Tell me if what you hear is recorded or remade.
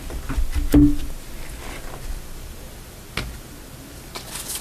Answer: recorded